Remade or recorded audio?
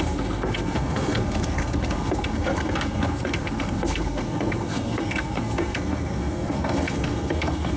remade